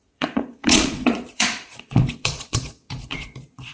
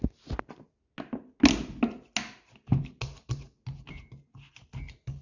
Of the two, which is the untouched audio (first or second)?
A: second